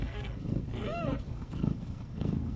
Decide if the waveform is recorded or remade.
remade